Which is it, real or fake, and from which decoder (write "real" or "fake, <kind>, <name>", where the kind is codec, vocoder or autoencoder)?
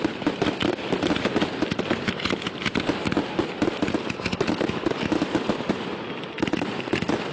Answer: real